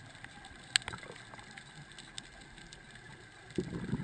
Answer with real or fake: real